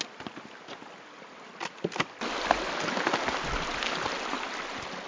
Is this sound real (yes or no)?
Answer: yes